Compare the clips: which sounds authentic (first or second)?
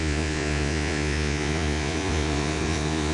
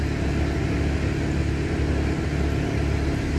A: second